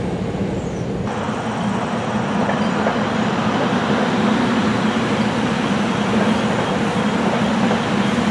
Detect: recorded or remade recorded